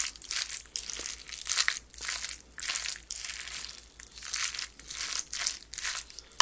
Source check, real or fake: real